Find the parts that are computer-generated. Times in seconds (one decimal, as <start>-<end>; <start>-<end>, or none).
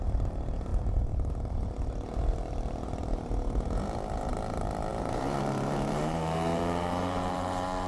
0.0-7.9